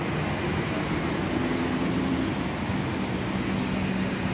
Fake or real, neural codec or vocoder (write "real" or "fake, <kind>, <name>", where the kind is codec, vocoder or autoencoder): real